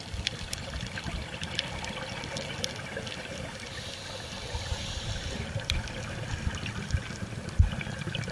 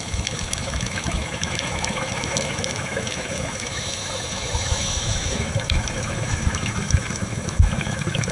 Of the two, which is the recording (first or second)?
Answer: first